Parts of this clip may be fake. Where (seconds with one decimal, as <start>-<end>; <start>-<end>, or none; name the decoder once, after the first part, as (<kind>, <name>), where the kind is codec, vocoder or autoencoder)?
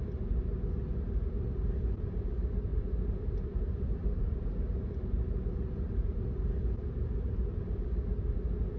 2.7-6.2 (vocoder, BigVGAN v2)